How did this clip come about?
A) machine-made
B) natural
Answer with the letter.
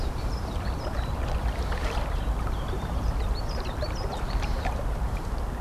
A